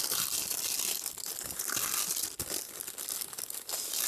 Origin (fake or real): real